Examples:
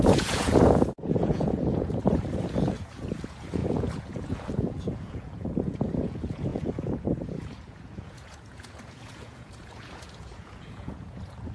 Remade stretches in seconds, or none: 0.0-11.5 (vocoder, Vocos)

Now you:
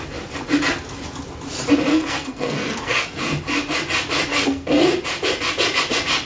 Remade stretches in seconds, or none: 1.9-3.2 (codec, SNAC); 4.3-4.8

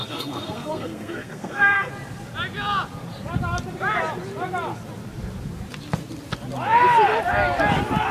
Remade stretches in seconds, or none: 0.0-1.9 (codec, SNAC)

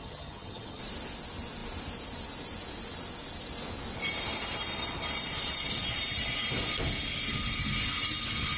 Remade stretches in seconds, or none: 0.0-0.8 (vocoder, HiFi-GAN)

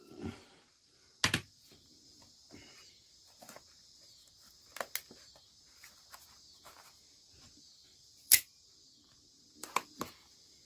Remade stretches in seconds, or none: 7.8-10.0 (vocoder, BigVGAN v2)

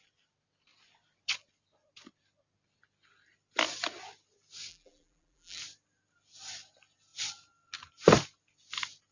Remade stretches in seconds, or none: 4.7-5.6 (vocoder, BigVGAN v2)